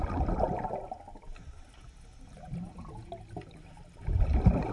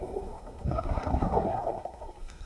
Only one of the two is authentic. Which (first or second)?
first